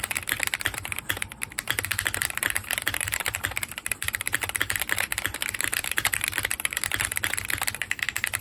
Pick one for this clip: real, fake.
fake